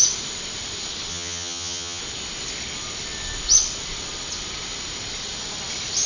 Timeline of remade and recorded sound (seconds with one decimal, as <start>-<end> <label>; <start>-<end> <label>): 0.0-1.1 recorded; 1.1-2.0 remade; 2.0-6.1 recorded